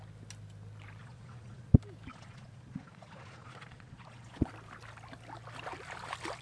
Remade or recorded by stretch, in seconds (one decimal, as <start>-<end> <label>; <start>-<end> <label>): 0.0-1.0 recorded; 1.0-1.7 remade; 1.7-2.1 recorded; 2.1-4.5 remade; 4.5-6.4 recorded